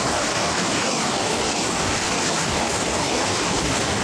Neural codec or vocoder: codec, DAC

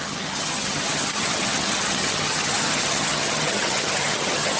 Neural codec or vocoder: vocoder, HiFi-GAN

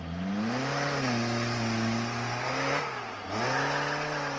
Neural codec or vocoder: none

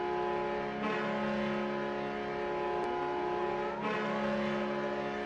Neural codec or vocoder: none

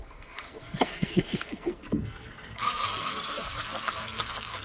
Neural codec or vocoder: codec, SNAC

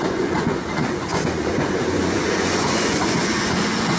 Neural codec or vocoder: vocoder, Vocos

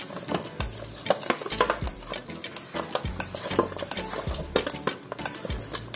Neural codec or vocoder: none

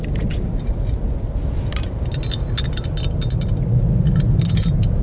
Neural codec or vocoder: none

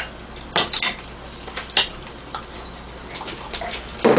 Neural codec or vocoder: none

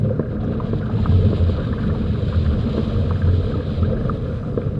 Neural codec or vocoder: none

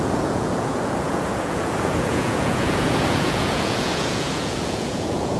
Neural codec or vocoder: vocoder, Vocos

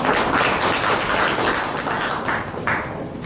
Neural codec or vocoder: none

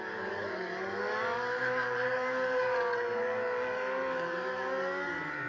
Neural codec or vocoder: codec, DAC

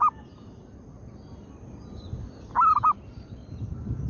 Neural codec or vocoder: none